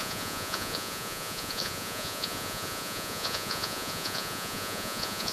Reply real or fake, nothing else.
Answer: fake